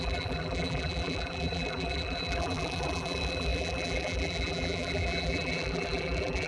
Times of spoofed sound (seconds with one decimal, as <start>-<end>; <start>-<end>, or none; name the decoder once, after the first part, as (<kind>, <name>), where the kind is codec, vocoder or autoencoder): 0.0-6.5 (vocoder, BigVGAN v2)

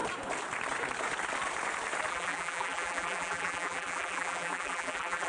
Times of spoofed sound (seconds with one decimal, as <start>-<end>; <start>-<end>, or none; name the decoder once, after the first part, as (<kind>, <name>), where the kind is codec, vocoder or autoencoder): 2.1-5.3 (vocoder, BigVGAN v2)

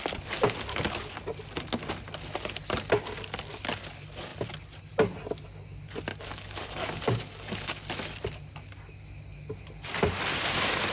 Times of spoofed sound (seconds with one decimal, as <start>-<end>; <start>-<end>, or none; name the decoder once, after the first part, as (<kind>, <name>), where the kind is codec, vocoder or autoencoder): 6.1-7.9 (codec, DAC)

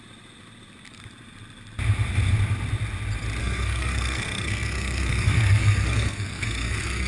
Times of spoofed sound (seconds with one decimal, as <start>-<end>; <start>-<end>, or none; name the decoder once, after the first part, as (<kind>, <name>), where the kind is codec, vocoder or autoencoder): 3.4-7.1 (codec, SNAC)